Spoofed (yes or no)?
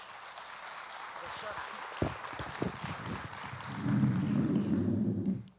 no